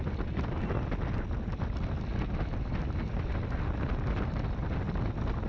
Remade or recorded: recorded